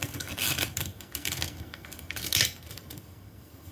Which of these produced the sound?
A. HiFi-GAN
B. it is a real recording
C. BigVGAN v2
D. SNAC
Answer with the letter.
D